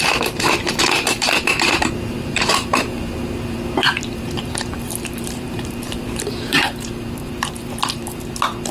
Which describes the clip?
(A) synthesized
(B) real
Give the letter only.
A